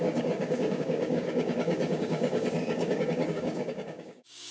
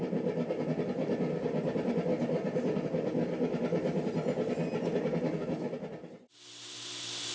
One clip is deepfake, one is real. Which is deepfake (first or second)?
first